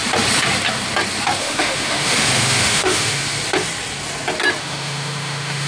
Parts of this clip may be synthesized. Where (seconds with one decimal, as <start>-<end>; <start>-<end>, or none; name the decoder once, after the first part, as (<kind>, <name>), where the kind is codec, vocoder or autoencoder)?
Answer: 1.4-3.2 (autoencoder, DAC-VAE); 4.6-5.7